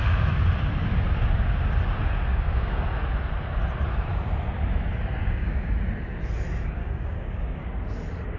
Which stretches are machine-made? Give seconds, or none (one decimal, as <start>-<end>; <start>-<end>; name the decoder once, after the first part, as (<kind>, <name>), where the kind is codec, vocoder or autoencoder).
2.3-2.8 (codec, DAC); 5.2-5.7; 6.8-7.6